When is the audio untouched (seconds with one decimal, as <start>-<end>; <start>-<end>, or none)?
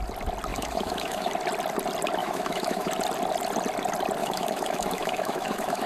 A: 0.0-0.5; 1.3-2.2; 2.9-4.2